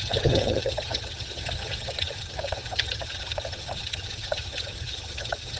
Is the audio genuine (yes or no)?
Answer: no